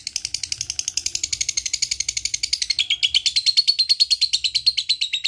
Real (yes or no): yes